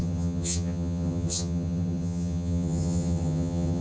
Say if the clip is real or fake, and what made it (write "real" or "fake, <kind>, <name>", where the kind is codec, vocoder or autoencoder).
fake, vocoder, HiFi-GAN